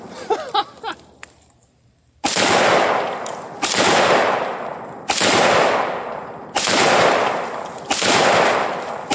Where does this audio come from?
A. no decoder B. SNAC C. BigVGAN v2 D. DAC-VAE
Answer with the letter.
C